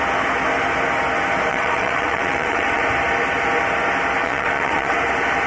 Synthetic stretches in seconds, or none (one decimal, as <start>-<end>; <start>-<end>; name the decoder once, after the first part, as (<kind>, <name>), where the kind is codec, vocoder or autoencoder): 1.5-2.8 (vocoder, WaveNeXt); 4.2-5.0